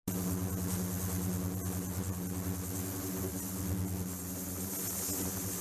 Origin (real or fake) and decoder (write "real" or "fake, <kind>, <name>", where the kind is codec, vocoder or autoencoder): real